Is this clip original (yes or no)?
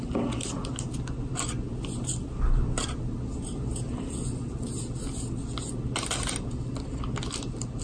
yes